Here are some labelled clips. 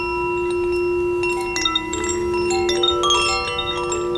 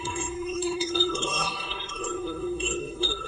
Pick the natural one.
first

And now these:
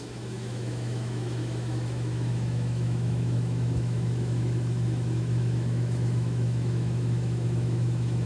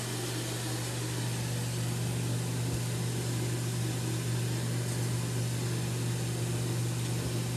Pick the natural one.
second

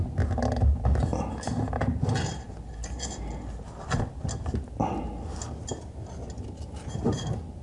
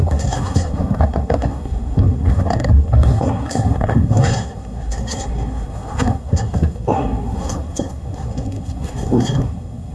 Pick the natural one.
first